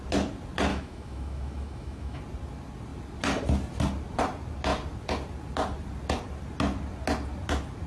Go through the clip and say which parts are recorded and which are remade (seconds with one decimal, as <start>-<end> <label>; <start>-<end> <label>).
0.0-0.7 recorded; 0.7-2.2 remade; 2.2-7.9 recorded